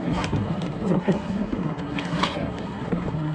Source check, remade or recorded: remade